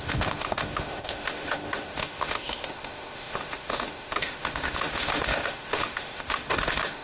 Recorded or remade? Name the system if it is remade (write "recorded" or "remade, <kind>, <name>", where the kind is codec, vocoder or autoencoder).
remade, autoencoder, DAC-VAE